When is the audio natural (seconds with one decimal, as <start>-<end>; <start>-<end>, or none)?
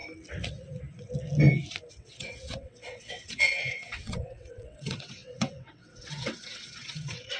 0.0-1.9